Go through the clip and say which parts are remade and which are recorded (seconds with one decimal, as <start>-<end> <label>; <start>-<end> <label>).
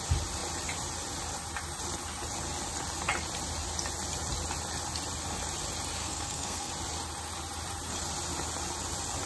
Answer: 0.0-6.0 recorded; 6.0-6.7 remade; 6.7-9.3 recorded